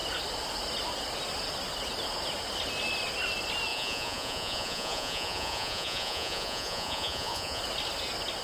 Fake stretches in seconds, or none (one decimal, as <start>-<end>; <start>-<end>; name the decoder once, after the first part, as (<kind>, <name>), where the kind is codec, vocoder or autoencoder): 3.7-7.6 (vocoder, Vocos)

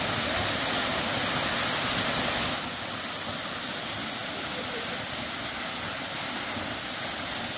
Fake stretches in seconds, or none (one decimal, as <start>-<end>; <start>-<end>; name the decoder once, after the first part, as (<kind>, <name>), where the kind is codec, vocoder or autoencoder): none

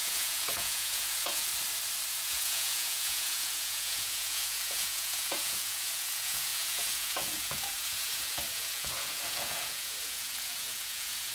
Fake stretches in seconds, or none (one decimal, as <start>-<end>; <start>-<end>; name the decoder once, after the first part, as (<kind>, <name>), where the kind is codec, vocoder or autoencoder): 0.0-1.5 (vocoder, Vocos); 2.1-11.3

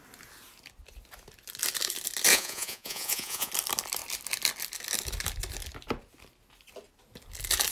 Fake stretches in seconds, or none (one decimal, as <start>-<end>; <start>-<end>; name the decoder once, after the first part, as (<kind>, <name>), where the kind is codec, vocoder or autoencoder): 2.3-3.5 (vocoder, Vocos)

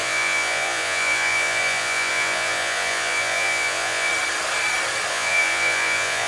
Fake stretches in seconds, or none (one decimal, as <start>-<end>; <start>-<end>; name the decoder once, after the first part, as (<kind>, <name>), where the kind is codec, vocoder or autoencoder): 0.0-4.1 (vocoder, Vocos); 5.1-6.3